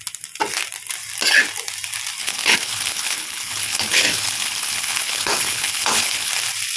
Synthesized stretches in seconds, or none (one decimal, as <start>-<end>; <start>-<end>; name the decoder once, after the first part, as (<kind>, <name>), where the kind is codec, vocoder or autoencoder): 2.2-6.3 (codec, HILCodec)